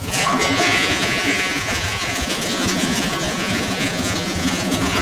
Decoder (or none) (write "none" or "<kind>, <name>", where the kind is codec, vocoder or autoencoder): vocoder, Vocos